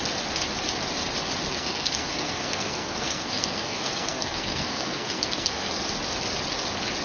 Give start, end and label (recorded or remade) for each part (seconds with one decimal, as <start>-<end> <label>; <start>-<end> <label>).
0.0-1.5 recorded; 1.5-5.7 remade; 5.7-7.0 recorded